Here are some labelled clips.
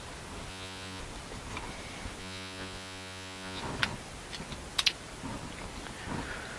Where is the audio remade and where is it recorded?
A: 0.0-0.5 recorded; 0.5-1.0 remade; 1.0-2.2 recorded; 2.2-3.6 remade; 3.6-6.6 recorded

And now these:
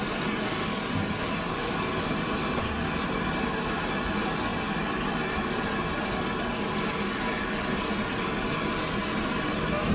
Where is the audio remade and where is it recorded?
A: 0.0-9.9 recorded

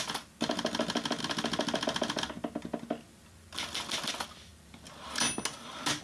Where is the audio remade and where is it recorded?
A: 0.0-6.0 recorded